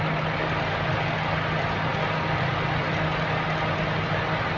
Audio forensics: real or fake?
real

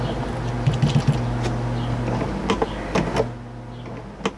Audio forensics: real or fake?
real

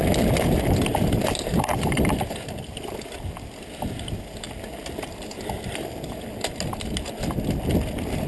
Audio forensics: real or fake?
real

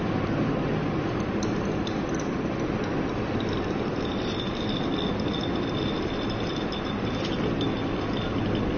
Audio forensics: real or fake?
real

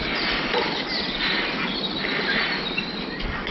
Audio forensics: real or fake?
real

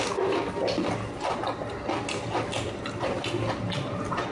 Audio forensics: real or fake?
real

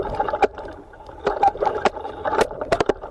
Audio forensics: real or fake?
fake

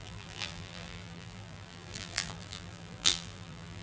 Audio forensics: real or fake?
fake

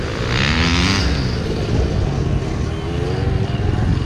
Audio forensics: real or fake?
real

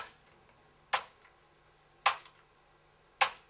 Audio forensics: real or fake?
real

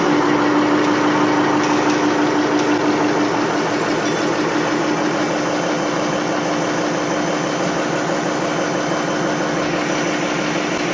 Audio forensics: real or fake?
real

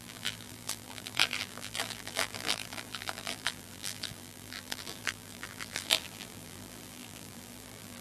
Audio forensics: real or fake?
fake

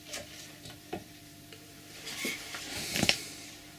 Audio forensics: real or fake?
fake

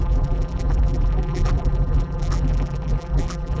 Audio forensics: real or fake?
fake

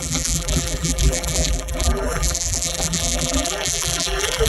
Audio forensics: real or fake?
fake